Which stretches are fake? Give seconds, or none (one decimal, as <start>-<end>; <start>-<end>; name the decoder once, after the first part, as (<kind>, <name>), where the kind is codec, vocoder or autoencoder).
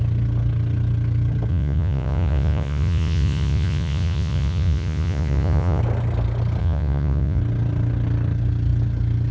1.5-5.8 (vocoder, Vocos); 6.6-7.4